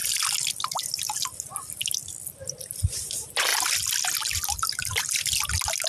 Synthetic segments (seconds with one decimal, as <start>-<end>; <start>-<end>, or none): 2.0-3.1